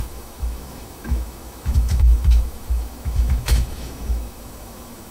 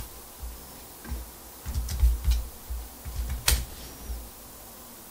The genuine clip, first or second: second